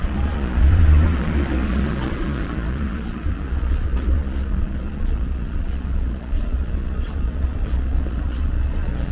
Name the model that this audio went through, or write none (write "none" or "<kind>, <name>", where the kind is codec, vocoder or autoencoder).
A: vocoder, Vocos